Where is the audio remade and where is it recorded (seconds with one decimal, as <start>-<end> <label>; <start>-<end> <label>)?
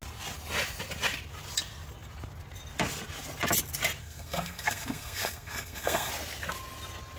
0.0-4.0 recorded; 4.0-6.1 remade; 6.1-7.2 recorded